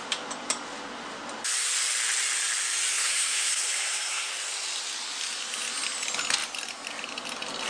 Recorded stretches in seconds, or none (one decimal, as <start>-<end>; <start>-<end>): 0.0-2.9; 4.3-7.7